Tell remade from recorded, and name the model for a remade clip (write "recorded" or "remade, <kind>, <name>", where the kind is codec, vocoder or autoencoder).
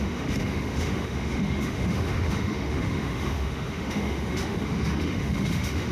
remade, autoencoder, DAC-VAE